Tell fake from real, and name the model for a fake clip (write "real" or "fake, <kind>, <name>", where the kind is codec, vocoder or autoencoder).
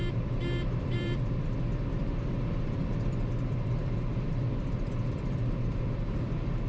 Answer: fake, vocoder, BigVGAN v2